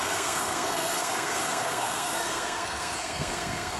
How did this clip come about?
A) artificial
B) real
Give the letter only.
A